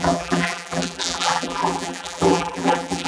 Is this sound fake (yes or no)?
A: yes